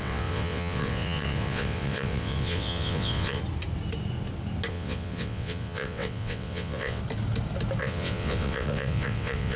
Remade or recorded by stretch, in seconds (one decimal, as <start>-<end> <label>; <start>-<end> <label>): 0.0-3.4 remade; 3.4-4.7 recorded; 4.7-7.0 remade; 7.0-7.8 recorded; 7.8-9.6 remade